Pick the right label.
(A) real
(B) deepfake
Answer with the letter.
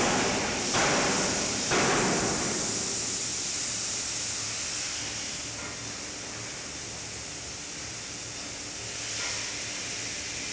A